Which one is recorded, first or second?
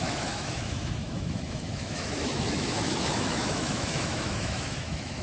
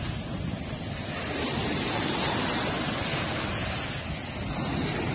second